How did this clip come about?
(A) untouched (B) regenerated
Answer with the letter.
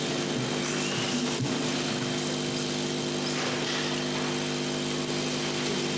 A